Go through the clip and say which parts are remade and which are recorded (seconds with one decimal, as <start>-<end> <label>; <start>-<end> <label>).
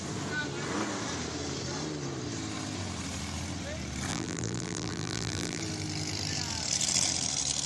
0.0-4.1 recorded; 4.1-5.6 remade; 5.6-7.7 recorded